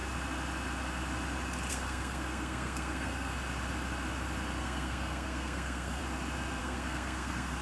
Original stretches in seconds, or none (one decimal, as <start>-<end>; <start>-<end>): 0.0-1.7; 3.3-4.6; 6.0-6.6

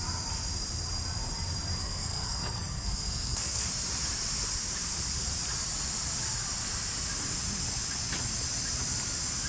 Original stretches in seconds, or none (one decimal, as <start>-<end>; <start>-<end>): 0.0-1.8; 3.7-9.5

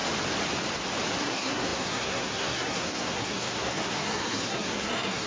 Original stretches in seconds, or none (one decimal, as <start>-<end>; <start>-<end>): 0.0-1.2